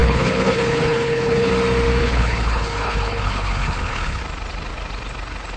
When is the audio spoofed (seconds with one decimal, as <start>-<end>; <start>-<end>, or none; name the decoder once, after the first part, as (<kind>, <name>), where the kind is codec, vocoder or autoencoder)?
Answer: 0.0-1.5 (codec, HILCodec); 2.0-4.2